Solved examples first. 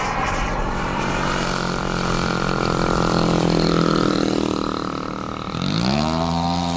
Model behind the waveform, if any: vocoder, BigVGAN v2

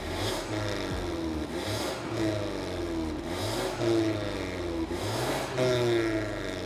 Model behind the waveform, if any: none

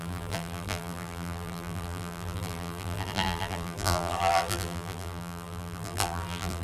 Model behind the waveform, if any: vocoder, BigVGAN v2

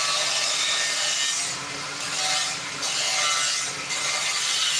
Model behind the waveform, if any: none